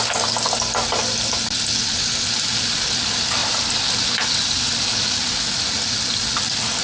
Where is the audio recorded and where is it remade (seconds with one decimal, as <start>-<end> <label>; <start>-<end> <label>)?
0.0-3.4 recorded; 3.4-4.9 remade; 4.9-6.8 recorded